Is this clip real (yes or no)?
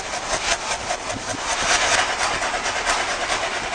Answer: yes